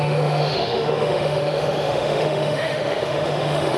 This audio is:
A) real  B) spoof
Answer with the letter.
B